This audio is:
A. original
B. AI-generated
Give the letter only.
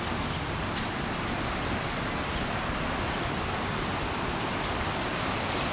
A